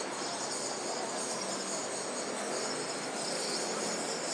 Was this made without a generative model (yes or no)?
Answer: yes